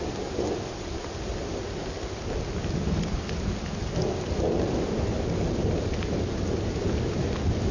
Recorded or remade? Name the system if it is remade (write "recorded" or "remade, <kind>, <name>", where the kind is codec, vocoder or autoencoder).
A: recorded